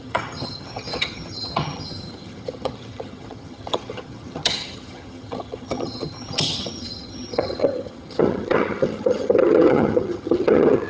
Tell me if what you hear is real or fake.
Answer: fake